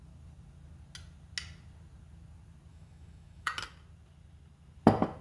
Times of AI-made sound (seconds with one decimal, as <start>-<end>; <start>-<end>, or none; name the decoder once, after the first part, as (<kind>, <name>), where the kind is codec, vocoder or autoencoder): 2.7-3.5 (autoencoder, DAC-VAE)